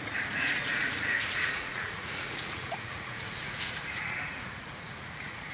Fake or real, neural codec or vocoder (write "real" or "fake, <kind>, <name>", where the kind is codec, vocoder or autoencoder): fake, vocoder, Vocos